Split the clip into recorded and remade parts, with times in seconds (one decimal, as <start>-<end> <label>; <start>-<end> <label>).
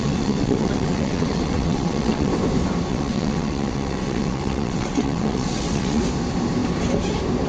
0.0-2.3 remade; 2.3-2.9 recorded; 2.9-6.0 remade; 6.0-7.5 recorded